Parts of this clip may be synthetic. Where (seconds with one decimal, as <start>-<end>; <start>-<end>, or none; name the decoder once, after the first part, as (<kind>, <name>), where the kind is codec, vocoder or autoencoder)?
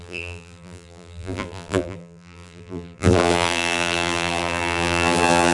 0.0-5.5 (vocoder, BigVGAN v2)